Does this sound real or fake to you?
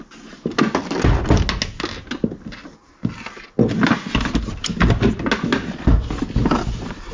real